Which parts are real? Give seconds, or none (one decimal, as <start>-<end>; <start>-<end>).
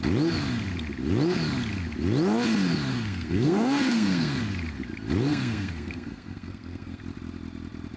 0.0-2.9; 4.4-5.3; 7.0-8.0